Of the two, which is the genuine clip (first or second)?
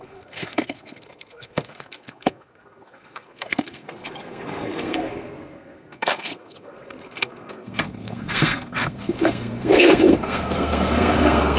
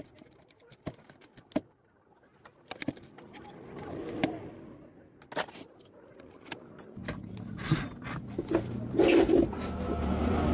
second